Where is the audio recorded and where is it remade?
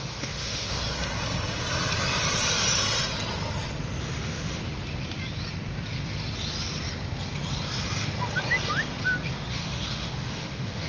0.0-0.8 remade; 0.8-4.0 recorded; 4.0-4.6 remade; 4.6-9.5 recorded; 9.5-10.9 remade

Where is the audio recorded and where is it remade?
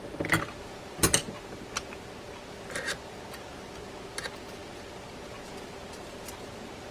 0.0-6.9 recorded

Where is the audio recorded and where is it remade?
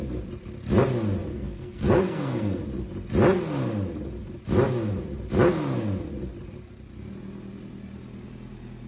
0.0-1.3 recorded; 1.3-2.6 remade; 2.6-8.9 recorded